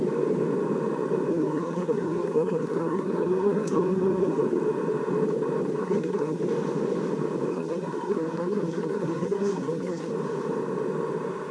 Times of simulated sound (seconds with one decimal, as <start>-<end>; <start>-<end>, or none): 1.3-4.4; 5.8-6.4; 7.5-10.1